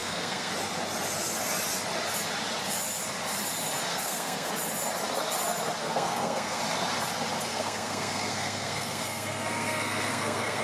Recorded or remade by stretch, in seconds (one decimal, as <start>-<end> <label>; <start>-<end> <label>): 0.0-0.5 remade; 0.5-3.9 recorded; 3.9-4.5 remade; 4.5-5.8 recorded; 5.8-6.6 remade; 6.6-7.5 recorded; 7.5-10.6 remade